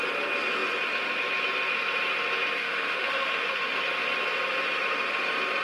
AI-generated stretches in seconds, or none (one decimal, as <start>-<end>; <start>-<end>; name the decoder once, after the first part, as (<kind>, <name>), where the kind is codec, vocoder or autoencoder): 2.6-3.8 (autoencoder, DAC-VAE)